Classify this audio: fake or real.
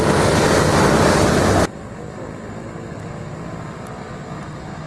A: real